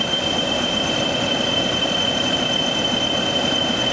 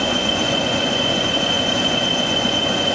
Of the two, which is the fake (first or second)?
second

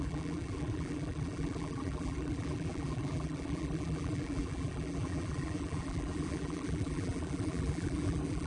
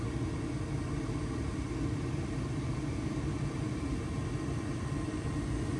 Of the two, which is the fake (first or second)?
first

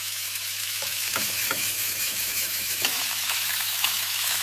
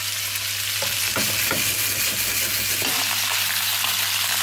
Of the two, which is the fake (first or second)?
first